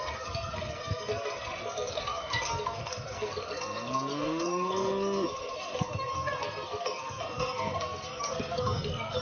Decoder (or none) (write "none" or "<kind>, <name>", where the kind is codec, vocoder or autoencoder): codec, SNAC